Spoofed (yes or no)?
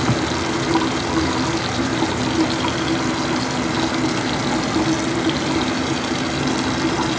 no